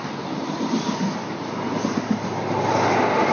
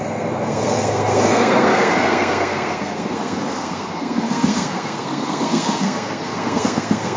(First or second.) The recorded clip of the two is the first